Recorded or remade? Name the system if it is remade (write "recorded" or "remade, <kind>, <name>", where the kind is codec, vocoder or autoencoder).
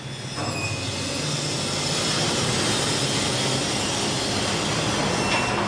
recorded